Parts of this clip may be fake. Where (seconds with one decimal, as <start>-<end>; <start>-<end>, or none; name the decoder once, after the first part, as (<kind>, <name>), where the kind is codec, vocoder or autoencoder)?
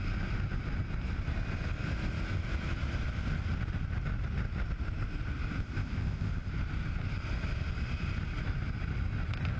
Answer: 5.6-6.5 (codec, ZipCodec)